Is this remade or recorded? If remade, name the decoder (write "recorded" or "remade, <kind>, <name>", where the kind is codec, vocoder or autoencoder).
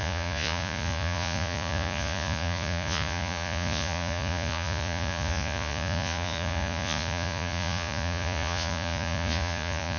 remade, vocoder, Vocos